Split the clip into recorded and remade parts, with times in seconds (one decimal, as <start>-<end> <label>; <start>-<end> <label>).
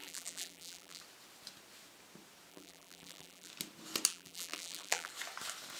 0.0-1.0 remade; 1.0-2.5 recorded; 2.5-3.5 remade; 3.5-4.1 recorded; 4.1-5.1 remade; 5.1-5.8 recorded